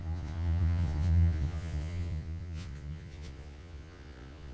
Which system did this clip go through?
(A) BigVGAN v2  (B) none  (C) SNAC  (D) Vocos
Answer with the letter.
D